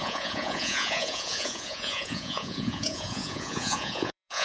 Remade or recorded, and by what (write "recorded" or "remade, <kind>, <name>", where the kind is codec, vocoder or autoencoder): remade, vocoder, Vocos